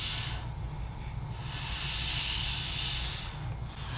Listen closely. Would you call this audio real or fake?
real